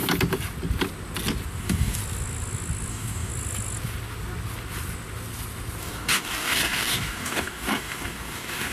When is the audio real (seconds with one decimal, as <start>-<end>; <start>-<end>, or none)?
0.0-1.6; 2.0-2.9; 3.3-5.8